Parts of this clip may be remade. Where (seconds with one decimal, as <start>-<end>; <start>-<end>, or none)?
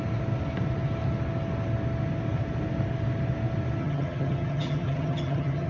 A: 3.8-5.7